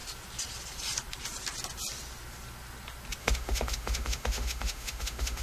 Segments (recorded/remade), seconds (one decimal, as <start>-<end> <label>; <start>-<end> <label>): 0.0-3.2 recorded; 3.2-5.4 remade